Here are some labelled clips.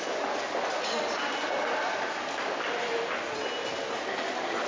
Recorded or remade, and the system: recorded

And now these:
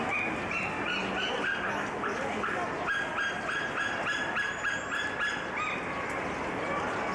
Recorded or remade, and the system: recorded